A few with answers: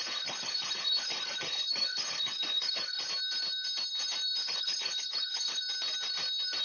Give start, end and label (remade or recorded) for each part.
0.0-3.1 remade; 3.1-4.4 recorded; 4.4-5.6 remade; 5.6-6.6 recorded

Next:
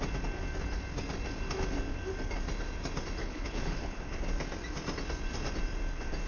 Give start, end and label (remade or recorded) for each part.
0.0-3.2 recorded; 3.2-4.2 remade; 4.2-6.3 recorded

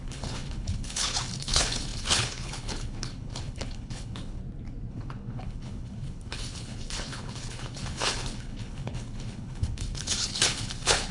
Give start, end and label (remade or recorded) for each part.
0.0-4.4 remade; 4.4-4.9 recorded; 4.9-11.1 remade

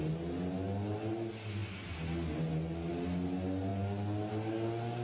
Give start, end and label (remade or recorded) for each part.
0.0-5.0 recorded

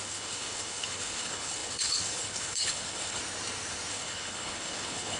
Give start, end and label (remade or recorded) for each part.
0.0-3.2 remade; 3.2-3.9 recorded; 3.9-5.2 remade

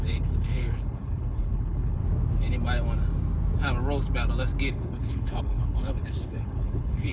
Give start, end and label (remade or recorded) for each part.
0.0-2.0 remade; 2.0-4.7 recorded; 4.7-7.1 remade

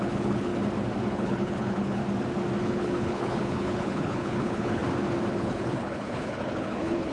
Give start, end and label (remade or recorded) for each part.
0.0-0.5 remade; 0.5-1.1 recorded; 1.1-2.0 remade; 2.0-2.6 recorded; 2.6-4.8 remade; 4.8-5.3 recorded; 5.3-7.1 remade

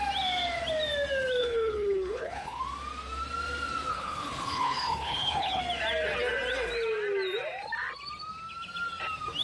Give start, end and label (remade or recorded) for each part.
0.0-1.4 recorded; 1.4-2.6 remade; 2.6-3.9 recorded; 3.9-5.6 remade; 5.6-9.4 recorded